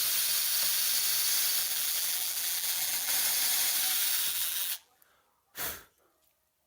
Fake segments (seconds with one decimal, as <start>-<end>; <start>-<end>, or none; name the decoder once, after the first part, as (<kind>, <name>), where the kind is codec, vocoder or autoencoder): 1.6-3.1 (vocoder, BigVGAN v2); 4.3-5.0